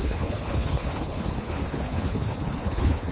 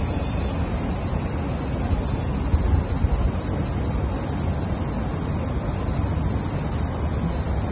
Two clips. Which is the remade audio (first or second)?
first